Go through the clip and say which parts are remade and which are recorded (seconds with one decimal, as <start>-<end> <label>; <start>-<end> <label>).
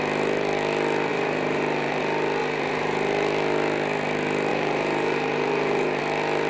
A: 0.0-1.1 recorded; 1.1-2.0 remade; 2.0-2.4 recorded; 2.4-3.1 remade; 3.1-4.5 recorded; 4.5-6.0 remade; 6.0-6.5 recorded